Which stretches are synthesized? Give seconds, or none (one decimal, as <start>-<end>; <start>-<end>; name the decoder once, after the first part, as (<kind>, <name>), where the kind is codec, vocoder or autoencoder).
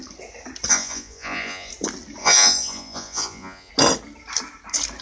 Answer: 0.7-1.7 (vocoder, Vocos); 2.2-3.7